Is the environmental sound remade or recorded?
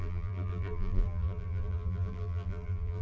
remade